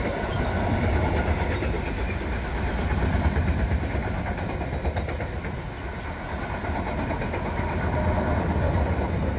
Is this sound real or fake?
real